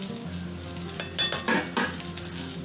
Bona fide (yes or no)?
yes